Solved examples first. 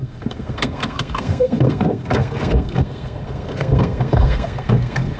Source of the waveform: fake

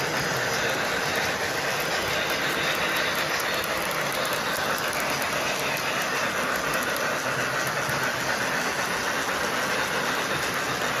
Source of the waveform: real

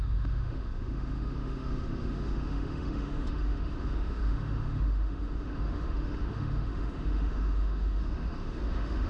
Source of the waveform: fake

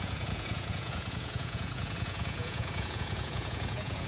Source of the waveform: fake